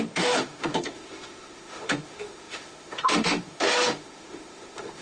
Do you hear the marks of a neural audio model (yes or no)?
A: yes